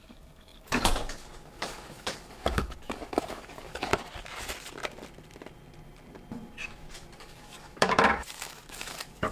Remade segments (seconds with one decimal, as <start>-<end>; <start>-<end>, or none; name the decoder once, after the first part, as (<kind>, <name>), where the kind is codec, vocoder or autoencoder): 0.0-3.9 (codec, DAC); 7.2-9.3